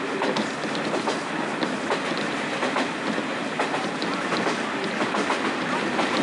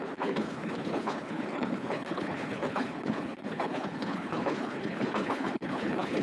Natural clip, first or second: first